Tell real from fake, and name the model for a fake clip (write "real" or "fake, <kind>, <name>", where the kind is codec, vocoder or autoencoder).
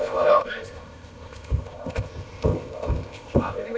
fake, codec, ZipCodec